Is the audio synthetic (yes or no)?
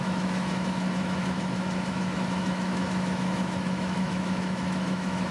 yes